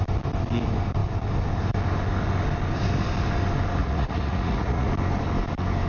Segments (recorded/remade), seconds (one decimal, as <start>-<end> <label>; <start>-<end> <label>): 0.0-3.8 recorded; 3.8-4.9 remade; 4.9-5.9 recorded